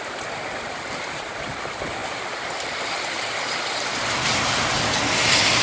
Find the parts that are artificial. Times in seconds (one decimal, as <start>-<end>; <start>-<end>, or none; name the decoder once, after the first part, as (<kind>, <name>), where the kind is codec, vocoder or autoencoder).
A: none